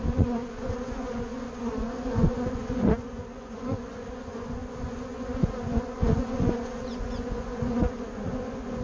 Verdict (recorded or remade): remade